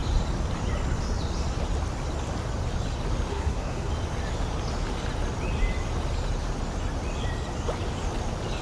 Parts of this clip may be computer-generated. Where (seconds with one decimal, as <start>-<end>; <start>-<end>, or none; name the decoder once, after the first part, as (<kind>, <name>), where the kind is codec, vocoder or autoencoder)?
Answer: 3.3-3.9 (codec, SNAC)